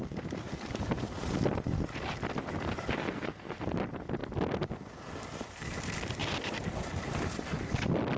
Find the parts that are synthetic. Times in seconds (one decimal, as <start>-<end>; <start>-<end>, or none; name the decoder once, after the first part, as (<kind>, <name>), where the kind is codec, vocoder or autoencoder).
3.0-3.6 (codec, SNAC)

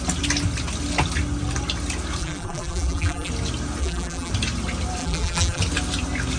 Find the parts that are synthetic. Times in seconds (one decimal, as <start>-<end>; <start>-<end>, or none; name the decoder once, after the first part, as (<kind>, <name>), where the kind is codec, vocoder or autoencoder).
2.2-3.3 (vocoder, BigVGAN v2); 3.8-4.3; 5.0-5.6

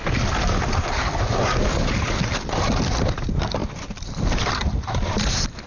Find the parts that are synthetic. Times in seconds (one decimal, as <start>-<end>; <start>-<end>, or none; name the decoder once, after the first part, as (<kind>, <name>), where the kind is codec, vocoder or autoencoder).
0.0-1.1 (vocoder, BigVGAN v2)

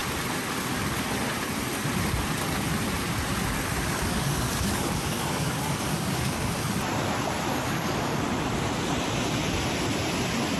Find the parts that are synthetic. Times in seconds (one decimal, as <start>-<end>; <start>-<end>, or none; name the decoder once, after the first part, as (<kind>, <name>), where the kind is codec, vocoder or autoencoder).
4.1-6.5 (codec, DAC); 7.5-8.2